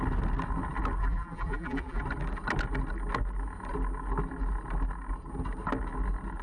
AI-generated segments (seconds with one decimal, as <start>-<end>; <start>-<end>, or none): 1.0-2.0